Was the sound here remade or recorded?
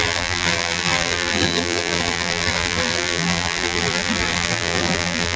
remade